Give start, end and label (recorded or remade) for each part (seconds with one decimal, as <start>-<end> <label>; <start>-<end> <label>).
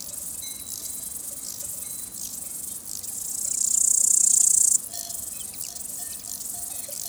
0.0-0.8 recorded; 0.8-2.7 remade; 2.7-7.1 recorded